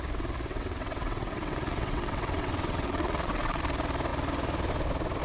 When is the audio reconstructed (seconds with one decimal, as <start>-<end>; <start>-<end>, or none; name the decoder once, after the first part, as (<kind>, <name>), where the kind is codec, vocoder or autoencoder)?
0.5-3.6 (vocoder, WaveNeXt)